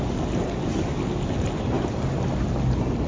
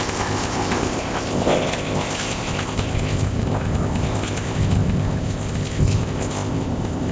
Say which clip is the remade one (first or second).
second